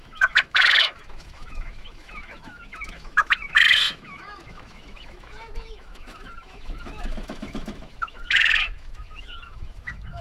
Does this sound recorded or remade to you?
remade